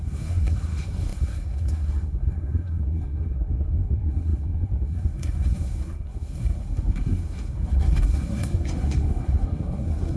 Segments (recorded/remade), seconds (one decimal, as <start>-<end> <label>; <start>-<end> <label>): 0.0-10.2 remade